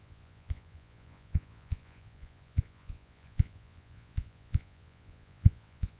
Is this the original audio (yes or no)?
no